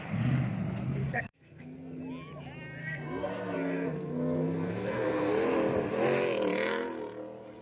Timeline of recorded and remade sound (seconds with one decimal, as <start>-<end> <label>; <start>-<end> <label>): 0.0-1.0 recorded; 1.0-2.0 remade; 2.0-2.8 recorded; 2.8-5.3 remade; 5.3-7.6 recorded